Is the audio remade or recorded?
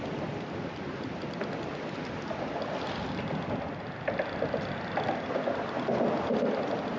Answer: recorded